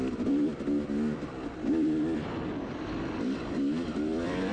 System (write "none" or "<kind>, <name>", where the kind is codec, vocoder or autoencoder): vocoder, BigVGAN v2